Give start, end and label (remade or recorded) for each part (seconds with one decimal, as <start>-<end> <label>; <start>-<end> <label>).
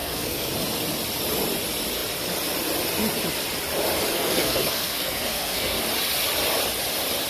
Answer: 0.0-0.5 remade; 0.5-4.1 recorded; 4.1-5.8 remade; 5.8-7.3 recorded